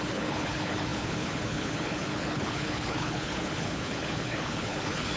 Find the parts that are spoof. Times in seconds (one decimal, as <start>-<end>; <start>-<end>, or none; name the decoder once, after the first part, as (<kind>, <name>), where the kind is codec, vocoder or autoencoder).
0.0-5.2 (codec, HILCodec)